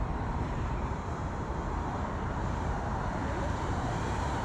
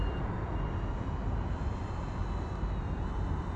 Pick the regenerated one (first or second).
first